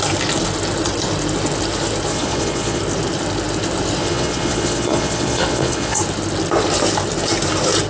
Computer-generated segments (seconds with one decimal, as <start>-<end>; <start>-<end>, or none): 2.1-2.8; 4.0-6.0